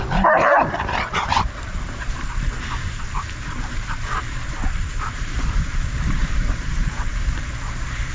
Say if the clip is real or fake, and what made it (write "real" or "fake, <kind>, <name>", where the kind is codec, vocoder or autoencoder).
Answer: fake, vocoder, BigVGAN v2